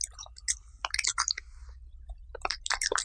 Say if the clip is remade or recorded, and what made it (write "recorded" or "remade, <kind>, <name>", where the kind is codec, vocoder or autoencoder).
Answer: recorded